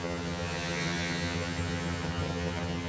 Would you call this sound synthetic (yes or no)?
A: yes